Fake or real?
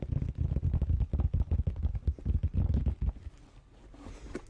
real